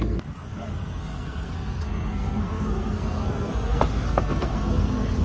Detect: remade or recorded remade